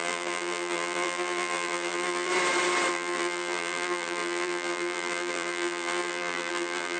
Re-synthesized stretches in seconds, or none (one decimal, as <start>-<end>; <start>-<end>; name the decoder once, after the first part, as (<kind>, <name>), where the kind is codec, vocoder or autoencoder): 0.0-2.3 (vocoder, BigVGAN v2); 2.9-7.0